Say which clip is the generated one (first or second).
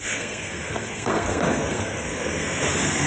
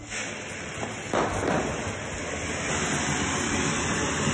first